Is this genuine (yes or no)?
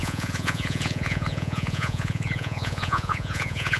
no